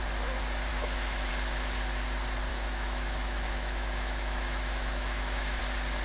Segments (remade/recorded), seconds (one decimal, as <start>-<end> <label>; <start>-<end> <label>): 0.0-0.7 recorded; 0.7-1.3 remade; 1.3-2.5 recorded; 2.5-5.6 remade; 5.6-6.0 recorded